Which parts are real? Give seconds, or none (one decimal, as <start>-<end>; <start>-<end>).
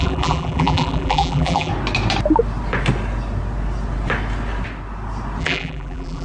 1.7-5.4